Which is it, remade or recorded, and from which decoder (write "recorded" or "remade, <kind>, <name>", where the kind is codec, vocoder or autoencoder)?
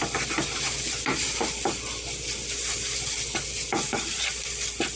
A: recorded